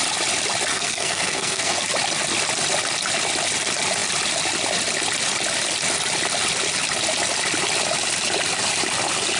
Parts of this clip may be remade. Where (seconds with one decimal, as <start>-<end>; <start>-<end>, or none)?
0.7-1.8